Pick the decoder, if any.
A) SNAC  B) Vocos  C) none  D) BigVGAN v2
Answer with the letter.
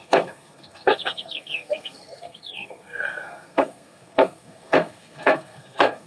A